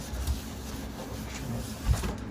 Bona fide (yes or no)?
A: yes